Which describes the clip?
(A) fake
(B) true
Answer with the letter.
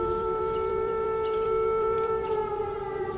A